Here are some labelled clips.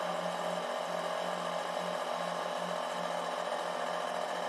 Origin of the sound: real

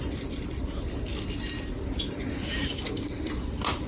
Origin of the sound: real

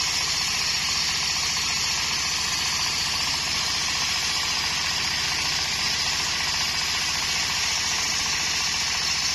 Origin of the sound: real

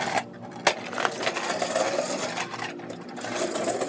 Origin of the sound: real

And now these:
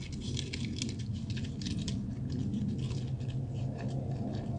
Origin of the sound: real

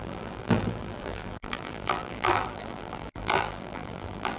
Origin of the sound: fake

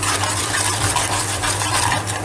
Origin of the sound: fake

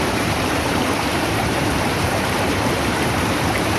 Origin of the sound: fake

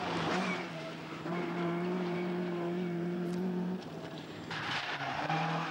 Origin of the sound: fake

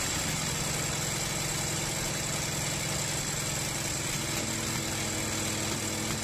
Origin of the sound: real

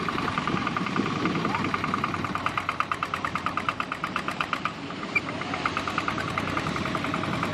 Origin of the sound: fake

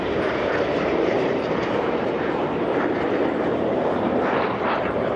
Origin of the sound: fake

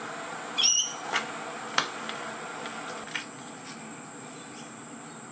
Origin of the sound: real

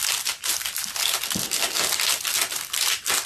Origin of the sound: real